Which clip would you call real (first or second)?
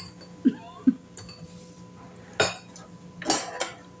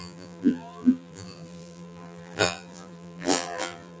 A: first